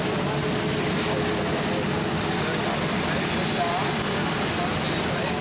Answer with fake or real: real